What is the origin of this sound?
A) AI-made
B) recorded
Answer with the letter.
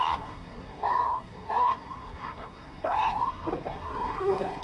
A